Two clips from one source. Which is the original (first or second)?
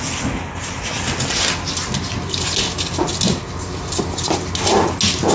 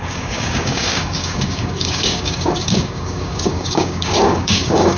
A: first